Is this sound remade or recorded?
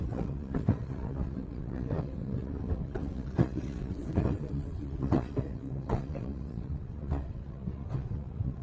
remade